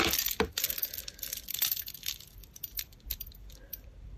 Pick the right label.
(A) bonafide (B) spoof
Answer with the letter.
B